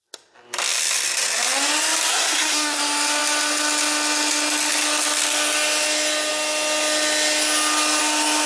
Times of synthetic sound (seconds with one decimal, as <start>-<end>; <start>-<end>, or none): 2.1-2.8